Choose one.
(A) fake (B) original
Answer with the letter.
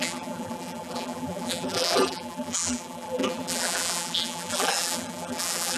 A